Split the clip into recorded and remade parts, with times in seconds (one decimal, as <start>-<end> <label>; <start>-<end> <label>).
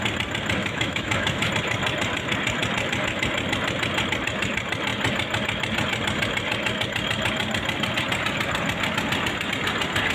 0.0-0.6 recorded; 0.6-1.5 remade; 1.5-10.1 recorded